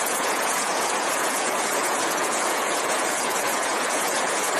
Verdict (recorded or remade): remade